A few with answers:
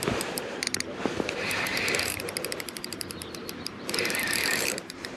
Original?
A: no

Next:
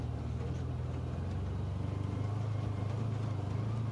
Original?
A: yes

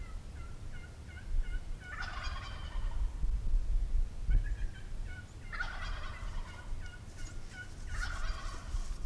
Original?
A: yes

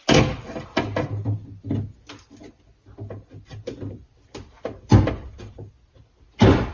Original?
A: yes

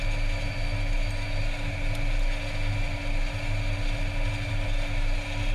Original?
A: yes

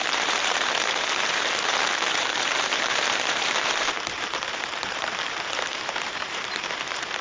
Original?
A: no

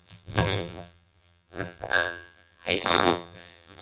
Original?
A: no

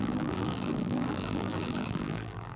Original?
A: no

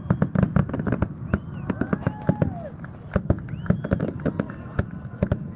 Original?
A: yes